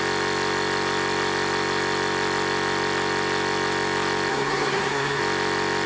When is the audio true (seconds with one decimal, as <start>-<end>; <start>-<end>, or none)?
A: 0.0-4.3; 5.2-5.9